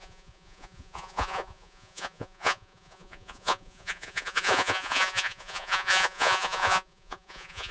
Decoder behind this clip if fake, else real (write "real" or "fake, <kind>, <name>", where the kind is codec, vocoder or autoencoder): fake, vocoder, Vocos